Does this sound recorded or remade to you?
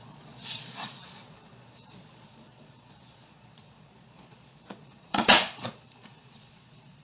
remade